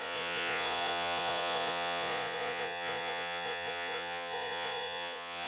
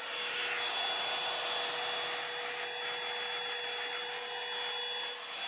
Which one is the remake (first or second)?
first